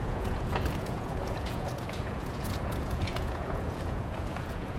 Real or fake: fake